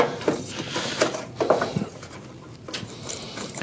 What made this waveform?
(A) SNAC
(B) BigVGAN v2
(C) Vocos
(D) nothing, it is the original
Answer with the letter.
B